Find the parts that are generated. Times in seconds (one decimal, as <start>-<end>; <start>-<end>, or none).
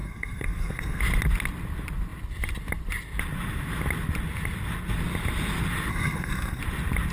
0.0-1.0; 5.9-6.6